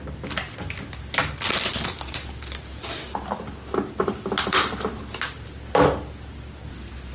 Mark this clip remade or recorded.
recorded